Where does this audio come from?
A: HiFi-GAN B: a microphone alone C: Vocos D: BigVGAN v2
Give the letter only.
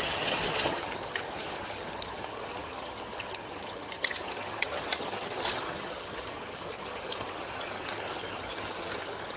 A